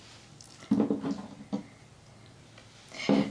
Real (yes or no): yes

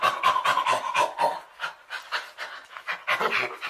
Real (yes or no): yes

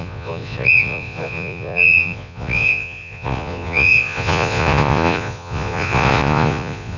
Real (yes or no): no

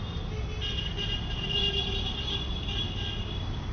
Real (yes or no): yes